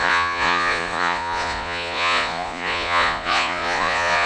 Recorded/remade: remade